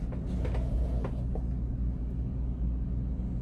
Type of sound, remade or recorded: recorded